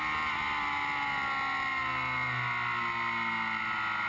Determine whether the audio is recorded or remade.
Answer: recorded